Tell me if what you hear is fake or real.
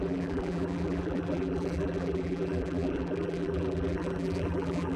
fake